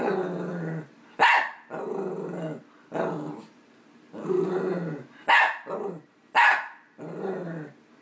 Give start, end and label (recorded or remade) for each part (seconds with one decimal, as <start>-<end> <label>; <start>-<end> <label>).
0.0-8.0 recorded